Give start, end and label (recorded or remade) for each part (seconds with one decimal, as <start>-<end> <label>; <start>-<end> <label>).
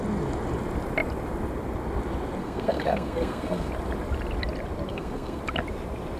0.0-2.4 recorded; 2.4-3.7 remade; 3.7-4.9 recorded; 4.9-5.4 remade; 5.4-6.2 recorded